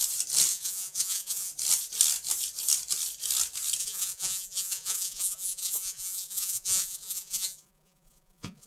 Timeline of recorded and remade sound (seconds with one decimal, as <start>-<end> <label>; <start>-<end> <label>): 0.0-0.5 recorded; 0.5-1.5 remade; 1.5-3.8 recorded; 3.8-8.7 remade